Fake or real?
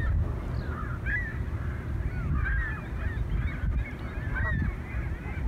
real